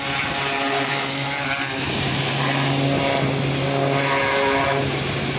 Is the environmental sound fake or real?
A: real